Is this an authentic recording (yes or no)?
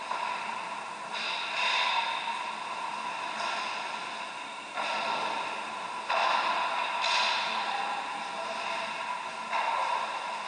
yes